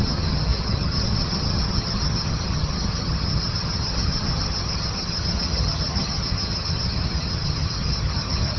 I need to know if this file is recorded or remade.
remade